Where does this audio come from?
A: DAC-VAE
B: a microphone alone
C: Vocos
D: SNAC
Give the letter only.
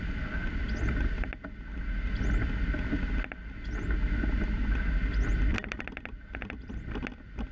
B